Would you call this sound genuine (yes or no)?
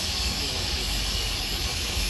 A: no